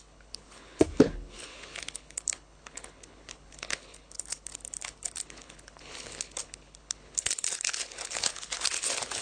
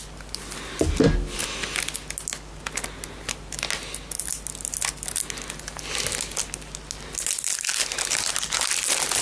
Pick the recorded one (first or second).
second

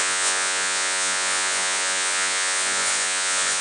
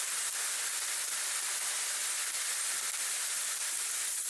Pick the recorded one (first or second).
second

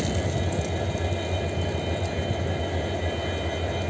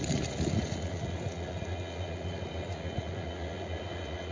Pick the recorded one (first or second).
first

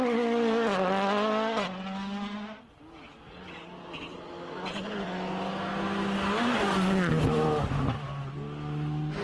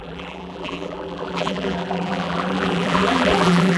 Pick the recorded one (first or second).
first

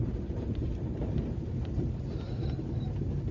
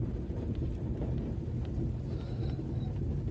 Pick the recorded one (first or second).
second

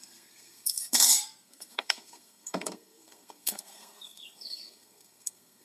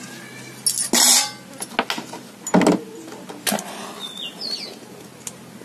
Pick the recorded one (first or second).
second